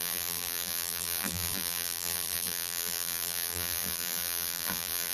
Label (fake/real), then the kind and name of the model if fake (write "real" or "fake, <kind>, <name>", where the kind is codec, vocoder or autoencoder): fake, vocoder, BigVGAN v2